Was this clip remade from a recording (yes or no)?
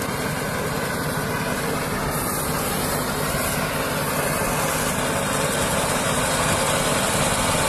no